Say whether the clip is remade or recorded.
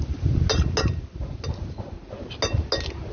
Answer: recorded